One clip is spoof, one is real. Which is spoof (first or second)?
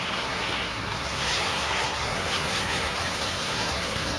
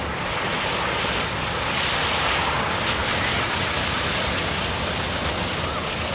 first